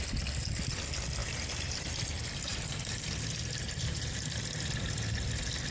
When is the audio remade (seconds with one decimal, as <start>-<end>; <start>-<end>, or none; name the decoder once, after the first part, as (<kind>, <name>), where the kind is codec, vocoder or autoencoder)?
1.2-2.0 (vocoder, BigVGAN v2); 2.5-4.4